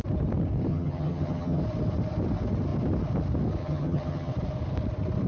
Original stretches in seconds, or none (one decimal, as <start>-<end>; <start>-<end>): 0.0-0.7; 1.6-3.6; 4.3-5.3